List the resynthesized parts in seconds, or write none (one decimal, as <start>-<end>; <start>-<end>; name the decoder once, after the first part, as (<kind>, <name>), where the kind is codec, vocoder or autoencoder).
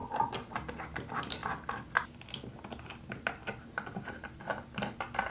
none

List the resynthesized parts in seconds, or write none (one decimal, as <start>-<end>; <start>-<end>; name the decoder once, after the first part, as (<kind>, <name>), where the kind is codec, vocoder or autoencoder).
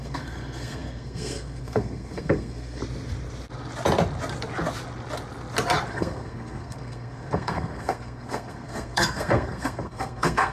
0.0-2.8 (codec, SNAC); 5.9-10.5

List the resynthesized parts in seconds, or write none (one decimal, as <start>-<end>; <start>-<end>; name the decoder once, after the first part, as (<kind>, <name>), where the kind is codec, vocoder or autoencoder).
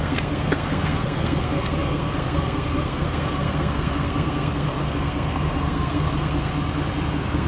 0.0-6.5 (codec, SNAC); 7.1-7.5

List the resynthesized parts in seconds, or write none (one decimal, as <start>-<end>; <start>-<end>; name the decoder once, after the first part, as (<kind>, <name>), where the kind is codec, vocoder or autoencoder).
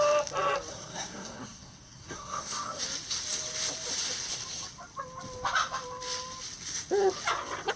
0.7-2.8 (codec, SNAC)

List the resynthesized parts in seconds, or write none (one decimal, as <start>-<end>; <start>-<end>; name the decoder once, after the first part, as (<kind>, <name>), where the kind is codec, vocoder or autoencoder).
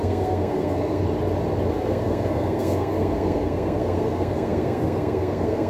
0.0-1.0 (codec, SNAC); 1.7-5.7